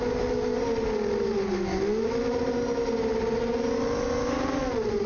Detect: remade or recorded recorded